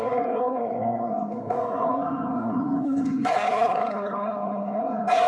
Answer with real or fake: fake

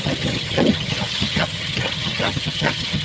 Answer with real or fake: fake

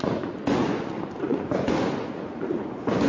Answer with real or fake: fake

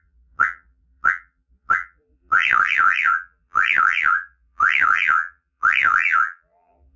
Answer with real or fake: fake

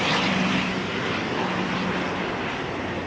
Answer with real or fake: real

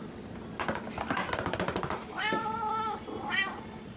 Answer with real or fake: real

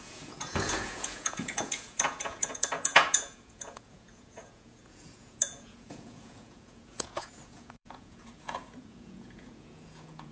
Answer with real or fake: fake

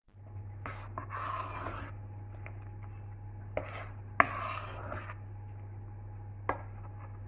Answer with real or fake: real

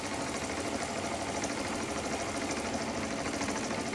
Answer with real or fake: fake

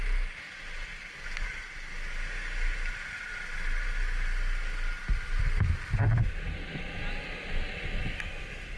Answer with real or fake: real